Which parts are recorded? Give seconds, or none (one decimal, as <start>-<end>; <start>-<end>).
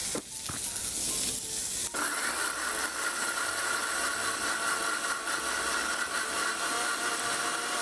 0.0-7.8